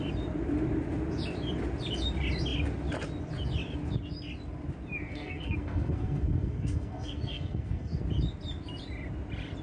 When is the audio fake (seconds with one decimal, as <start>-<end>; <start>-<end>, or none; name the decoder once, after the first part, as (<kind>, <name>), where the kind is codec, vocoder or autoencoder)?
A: 5.1-8.0 (codec, SNAC)